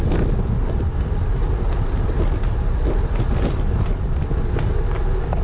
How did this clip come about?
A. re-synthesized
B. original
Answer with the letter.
B